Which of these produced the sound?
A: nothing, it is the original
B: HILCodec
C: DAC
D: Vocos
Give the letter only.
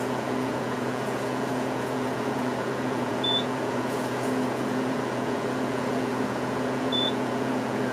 D